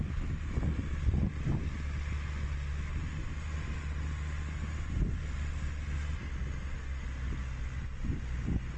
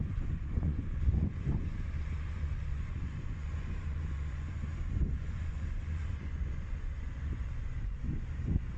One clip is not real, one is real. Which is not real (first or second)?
second